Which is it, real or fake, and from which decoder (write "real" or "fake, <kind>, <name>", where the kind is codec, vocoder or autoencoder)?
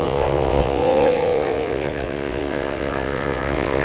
fake, vocoder, WaveNeXt